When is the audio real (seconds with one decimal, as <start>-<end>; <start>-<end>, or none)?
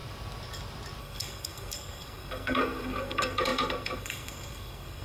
0.0-1.0